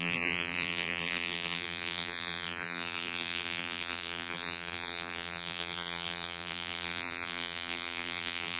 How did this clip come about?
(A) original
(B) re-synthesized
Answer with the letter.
B